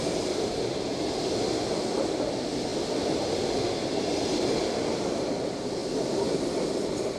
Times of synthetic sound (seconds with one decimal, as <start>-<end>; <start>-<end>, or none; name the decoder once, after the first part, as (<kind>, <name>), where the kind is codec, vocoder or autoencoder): none